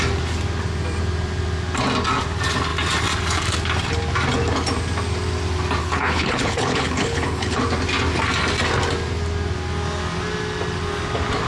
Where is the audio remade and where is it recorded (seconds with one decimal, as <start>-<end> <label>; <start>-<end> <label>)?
0.0-5.8 recorded; 5.8-7.6 remade; 7.6-11.5 recorded